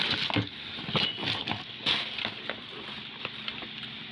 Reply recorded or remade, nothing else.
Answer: recorded